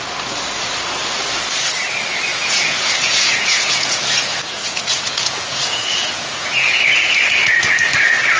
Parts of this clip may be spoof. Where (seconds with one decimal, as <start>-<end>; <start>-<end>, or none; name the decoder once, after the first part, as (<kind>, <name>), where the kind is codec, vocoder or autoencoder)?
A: 2.3-6.8 (vocoder, Vocos)